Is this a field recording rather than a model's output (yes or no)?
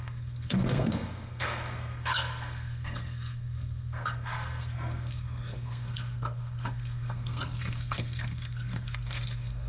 no